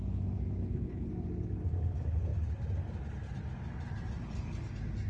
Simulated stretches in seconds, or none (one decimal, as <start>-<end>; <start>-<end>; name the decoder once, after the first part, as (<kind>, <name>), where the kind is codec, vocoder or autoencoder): 0.6-1.1 (codec, HILCodec)